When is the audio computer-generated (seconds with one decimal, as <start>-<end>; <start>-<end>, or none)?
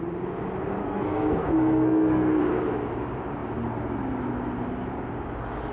0.8-2.4